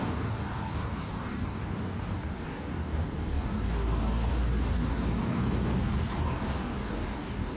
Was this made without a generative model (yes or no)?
no